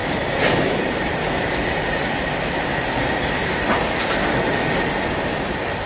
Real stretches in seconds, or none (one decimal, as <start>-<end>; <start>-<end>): 0.0-3.5